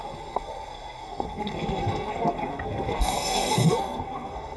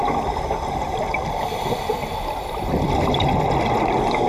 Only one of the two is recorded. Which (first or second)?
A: second